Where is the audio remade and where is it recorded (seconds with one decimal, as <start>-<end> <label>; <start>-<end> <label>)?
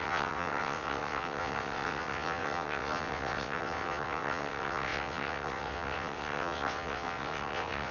0.0-7.9 remade